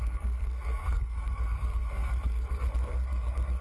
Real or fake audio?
fake